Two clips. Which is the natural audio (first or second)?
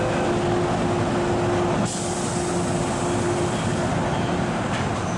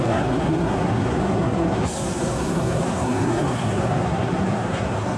first